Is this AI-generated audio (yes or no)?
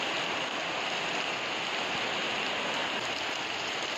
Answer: no